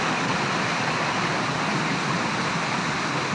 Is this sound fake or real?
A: real